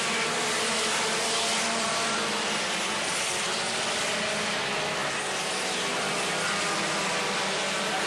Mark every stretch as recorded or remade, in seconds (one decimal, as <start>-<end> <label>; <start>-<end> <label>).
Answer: 0.0-8.1 recorded

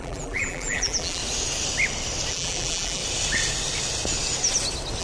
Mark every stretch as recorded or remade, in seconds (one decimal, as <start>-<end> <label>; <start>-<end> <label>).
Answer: 0.0-1.2 remade; 1.2-2.3 recorded; 2.3-3.0 remade; 3.0-5.0 recorded